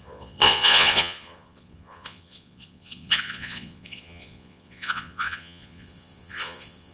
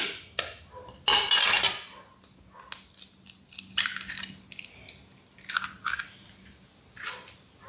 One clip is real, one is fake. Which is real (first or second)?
second